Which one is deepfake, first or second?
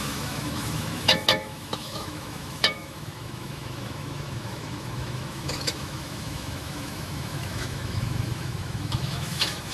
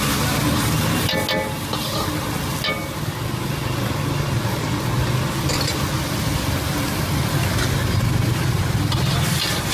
first